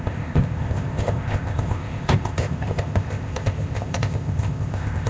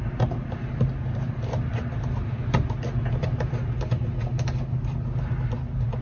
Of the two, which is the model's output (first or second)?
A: first